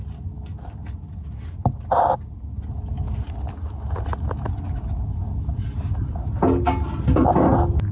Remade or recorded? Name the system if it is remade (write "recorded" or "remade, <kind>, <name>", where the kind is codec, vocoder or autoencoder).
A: recorded